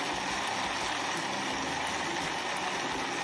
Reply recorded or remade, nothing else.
recorded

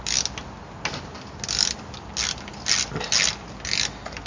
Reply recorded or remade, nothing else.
recorded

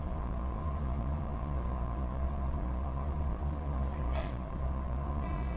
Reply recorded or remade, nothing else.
remade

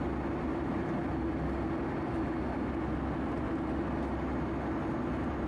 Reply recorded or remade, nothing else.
recorded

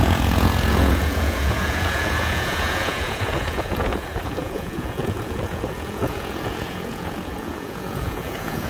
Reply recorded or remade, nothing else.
remade